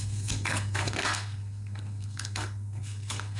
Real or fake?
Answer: fake